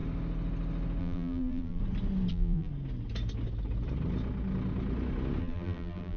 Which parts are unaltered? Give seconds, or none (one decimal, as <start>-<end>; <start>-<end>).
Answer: 0.0-1.0; 1.8-2.3; 2.7-5.4